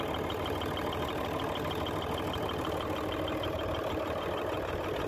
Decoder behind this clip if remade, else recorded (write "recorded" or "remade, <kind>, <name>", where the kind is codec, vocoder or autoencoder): recorded